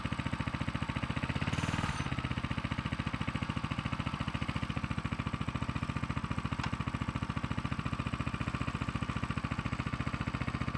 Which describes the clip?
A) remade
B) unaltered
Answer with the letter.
B